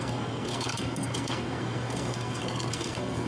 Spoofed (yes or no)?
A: yes